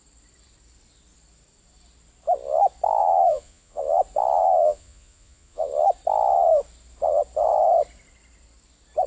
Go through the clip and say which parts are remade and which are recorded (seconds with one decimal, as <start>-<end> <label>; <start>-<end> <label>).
0.0-3.0 recorded; 3.0-3.8 remade; 3.8-4.4 recorded; 4.4-5.7 remade; 5.7-9.1 recorded